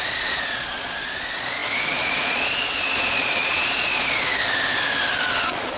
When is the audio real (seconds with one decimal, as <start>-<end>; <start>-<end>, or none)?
4.3-5.2